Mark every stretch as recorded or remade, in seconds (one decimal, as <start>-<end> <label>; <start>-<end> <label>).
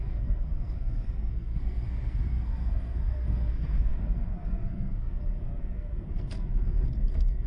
0.0-7.5 remade